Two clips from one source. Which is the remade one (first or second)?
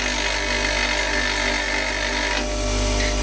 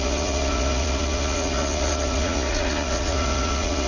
second